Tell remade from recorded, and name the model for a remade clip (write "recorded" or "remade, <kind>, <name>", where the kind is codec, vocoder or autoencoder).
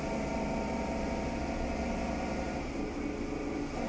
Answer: recorded